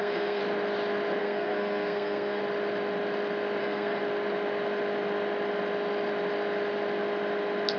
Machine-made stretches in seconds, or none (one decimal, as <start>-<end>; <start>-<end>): 0.0-0.4; 1.2-2.4; 3.6-4.0